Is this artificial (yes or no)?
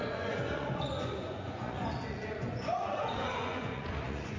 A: yes